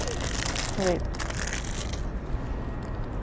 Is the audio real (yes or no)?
yes